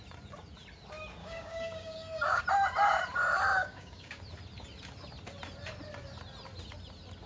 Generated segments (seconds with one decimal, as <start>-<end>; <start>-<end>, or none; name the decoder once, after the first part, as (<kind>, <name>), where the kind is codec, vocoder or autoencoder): 1.2-2.4 (codec, DAC); 3.6-4.2